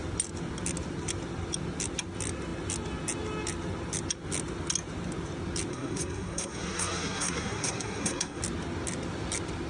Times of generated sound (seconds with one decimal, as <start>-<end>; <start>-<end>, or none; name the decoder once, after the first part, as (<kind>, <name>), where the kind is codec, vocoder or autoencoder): 5.7-8.4 (codec, SNAC)